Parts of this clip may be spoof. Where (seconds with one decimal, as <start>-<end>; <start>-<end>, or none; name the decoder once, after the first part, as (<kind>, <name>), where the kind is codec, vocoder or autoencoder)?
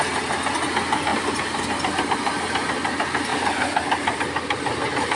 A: none